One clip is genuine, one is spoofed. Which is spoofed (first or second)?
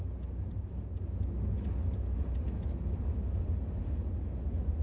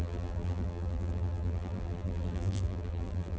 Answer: second